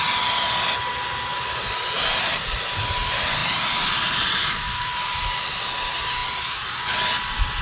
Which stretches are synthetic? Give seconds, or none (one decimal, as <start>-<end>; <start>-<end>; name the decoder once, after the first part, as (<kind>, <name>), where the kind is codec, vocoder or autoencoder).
3.4-5.3 (vocoder, BigVGAN v2)